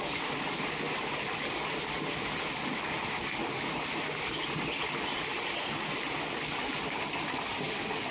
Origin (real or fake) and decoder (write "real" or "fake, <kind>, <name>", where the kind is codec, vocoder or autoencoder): real